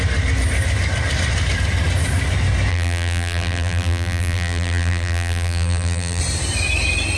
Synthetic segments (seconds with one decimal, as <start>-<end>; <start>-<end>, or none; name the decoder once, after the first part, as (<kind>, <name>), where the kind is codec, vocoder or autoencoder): 2.7-6.2 (vocoder, BigVGAN v2)